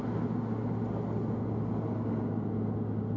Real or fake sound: real